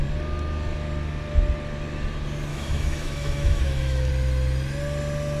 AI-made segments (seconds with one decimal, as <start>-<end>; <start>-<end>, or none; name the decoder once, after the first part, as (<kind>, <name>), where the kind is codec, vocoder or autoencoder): 2.5-4.1 (autoencoder, DAC-VAE)